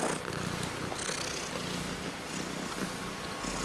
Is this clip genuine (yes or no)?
yes